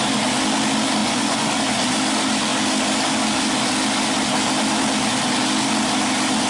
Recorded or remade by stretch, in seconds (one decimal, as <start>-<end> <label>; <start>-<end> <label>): 0.0-1.0 recorded; 1.0-1.6 remade; 1.6-6.5 recorded